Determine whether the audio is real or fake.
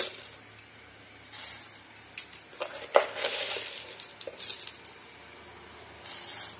real